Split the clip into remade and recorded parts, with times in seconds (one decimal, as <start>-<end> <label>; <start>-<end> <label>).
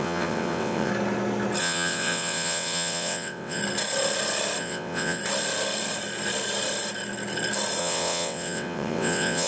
0.0-0.9 remade; 0.9-1.6 recorded; 1.6-3.6 remade; 3.6-4.6 recorded; 4.6-5.2 remade; 5.2-7.8 recorded; 7.8-9.5 remade